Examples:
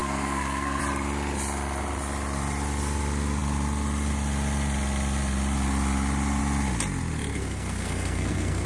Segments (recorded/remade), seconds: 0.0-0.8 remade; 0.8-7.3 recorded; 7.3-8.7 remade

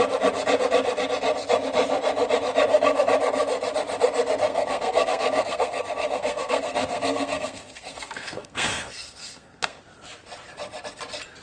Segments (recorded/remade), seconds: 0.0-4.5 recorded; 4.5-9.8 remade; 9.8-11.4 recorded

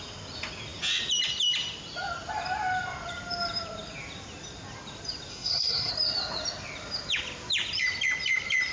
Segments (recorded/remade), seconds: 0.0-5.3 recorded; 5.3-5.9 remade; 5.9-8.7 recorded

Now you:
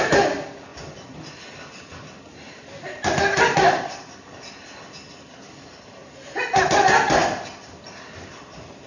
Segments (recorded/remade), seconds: 0.0-8.9 recorded